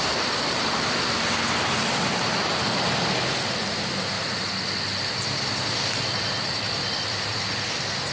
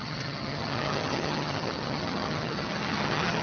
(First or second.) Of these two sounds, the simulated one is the second